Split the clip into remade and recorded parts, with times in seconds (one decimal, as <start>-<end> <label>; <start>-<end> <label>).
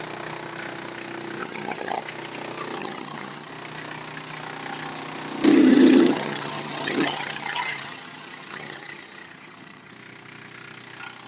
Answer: 0.0-1.4 recorded; 1.4-2.0 remade; 2.0-2.8 recorded; 2.8-3.5 remade; 3.5-5.5 recorded; 5.5-9.9 remade; 9.9-11.3 recorded